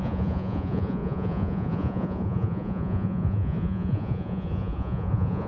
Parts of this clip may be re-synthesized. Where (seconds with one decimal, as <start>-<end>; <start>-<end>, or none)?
0.0-5.5